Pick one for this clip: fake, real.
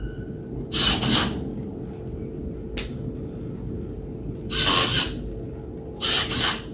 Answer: real